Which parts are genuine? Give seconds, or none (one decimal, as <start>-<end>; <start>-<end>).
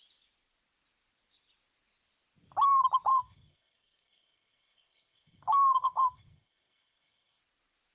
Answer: 0.0-3.1; 7.4-7.9